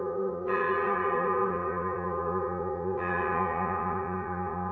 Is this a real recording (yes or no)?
no